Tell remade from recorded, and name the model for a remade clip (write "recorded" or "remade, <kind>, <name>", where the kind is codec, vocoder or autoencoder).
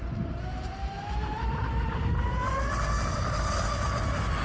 recorded